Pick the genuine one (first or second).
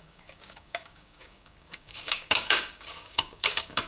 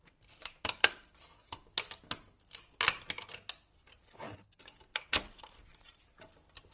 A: second